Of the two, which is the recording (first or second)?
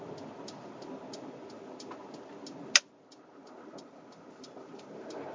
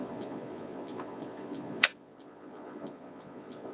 first